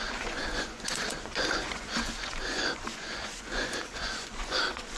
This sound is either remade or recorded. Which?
remade